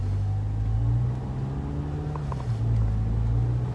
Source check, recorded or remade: recorded